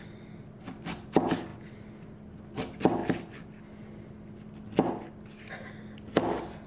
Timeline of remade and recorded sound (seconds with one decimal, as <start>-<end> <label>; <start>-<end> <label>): 0.0-6.7 recorded